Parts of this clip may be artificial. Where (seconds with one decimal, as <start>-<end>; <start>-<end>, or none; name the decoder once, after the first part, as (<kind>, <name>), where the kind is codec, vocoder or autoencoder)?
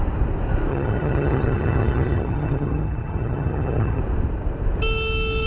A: 0.7-4.0 (vocoder, HiFi-GAN)